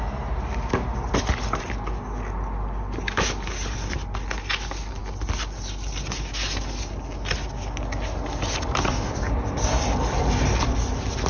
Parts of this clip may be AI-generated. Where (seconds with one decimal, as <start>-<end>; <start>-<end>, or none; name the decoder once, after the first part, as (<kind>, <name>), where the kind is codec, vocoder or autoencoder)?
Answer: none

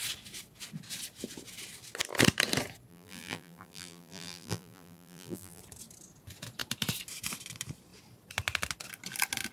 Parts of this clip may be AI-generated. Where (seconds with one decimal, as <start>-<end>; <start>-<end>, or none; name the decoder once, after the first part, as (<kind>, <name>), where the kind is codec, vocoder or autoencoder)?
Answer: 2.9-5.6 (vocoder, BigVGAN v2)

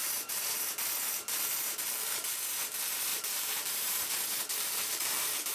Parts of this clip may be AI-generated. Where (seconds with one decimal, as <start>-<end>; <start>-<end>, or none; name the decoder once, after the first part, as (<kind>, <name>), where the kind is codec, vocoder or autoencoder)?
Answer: 0.0-0.6 (vocoder, BigVGAN v2); 3.1-4.1; 4.5-5.5

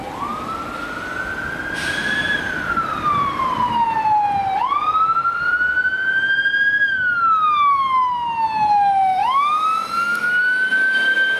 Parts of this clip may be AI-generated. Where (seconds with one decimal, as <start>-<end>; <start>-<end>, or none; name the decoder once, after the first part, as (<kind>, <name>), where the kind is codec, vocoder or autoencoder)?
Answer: none

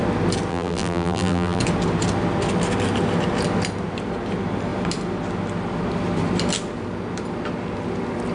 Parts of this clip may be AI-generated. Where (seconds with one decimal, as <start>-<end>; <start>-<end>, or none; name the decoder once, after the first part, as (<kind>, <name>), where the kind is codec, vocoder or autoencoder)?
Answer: 0.5-1.6 (vocoder, BigVGAN v2)

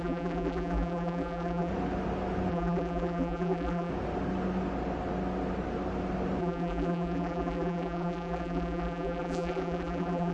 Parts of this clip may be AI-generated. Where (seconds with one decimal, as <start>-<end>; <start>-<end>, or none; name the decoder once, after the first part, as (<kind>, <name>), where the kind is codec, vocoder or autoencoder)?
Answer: 0.0-1.7 (vocoder, BigVGAN v2); 2.5-3.9; 6.4-10.3

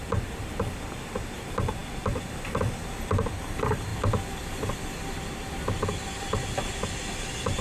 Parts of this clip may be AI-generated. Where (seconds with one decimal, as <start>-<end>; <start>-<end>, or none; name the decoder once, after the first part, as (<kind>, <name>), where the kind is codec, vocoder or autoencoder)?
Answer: none

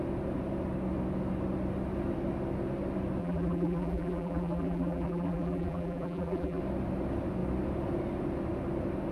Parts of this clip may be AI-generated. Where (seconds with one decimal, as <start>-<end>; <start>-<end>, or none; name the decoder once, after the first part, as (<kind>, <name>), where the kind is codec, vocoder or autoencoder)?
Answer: 3.2-6.6 (vocoder, BigVGAN v2)